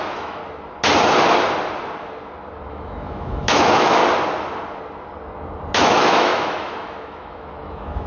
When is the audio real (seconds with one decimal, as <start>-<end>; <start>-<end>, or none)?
0.4-2.7; 4.0-5.8